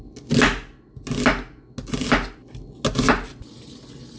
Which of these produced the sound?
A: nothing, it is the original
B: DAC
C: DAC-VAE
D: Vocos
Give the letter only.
A